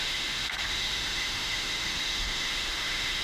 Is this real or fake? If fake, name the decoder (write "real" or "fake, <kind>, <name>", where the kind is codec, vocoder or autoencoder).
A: fake, autoencoder, DAC-VAE